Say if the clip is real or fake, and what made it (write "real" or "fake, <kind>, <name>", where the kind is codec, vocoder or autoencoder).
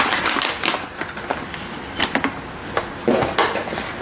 real